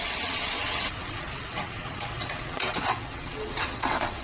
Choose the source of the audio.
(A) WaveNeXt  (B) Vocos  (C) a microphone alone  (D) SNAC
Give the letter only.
A